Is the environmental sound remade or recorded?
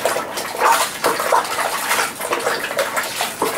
recorded